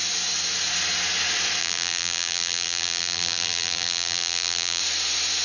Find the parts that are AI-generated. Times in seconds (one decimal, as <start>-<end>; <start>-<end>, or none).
1.6-4.8